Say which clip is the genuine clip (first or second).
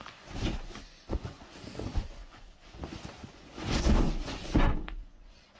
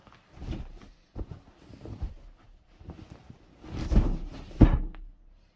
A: second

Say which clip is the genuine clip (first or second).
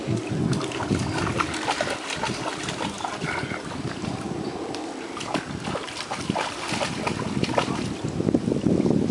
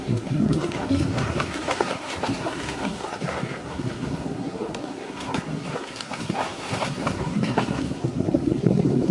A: first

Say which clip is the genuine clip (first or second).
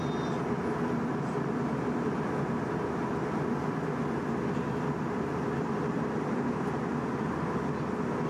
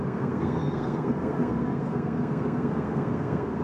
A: first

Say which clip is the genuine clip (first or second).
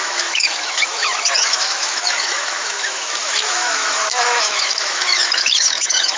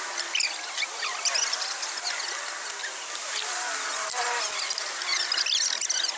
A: second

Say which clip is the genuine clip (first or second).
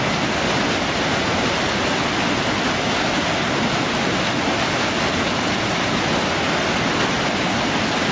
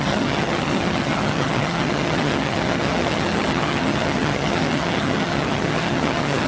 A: first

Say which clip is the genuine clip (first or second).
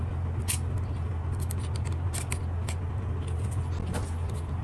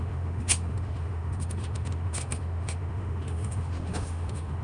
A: first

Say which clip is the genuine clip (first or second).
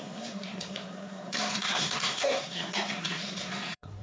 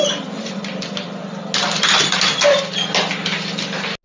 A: second